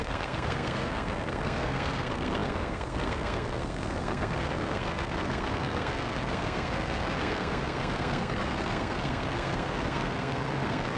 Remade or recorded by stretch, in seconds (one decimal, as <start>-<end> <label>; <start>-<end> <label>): 0.0-11.0 remade